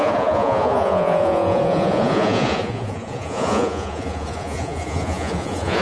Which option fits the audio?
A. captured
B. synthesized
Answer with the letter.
B